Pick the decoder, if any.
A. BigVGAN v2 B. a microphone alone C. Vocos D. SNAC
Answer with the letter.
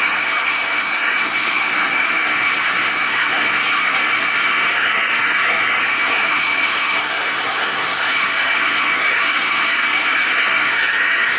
D